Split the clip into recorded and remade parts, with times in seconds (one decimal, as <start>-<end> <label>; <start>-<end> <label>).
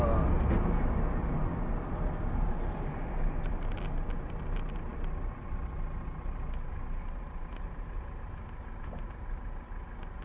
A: 0.0-1.7 recorded; 1.7-2.5 remade; 2.5-10.2 recorded